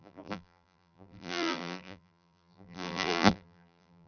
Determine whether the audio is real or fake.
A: fake